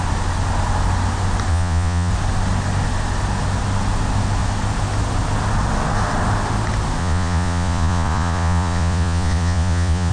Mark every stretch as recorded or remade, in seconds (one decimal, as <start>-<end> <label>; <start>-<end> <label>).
0.0-1.5 recorded; 1.5-2.1 remade; 2.1-7.0 recorded; 7.0-10.1 remade